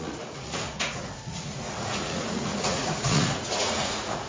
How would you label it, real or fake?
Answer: fake